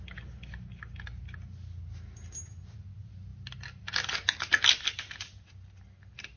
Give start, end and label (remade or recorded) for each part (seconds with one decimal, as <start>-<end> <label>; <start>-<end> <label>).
0.0-6.4 recorded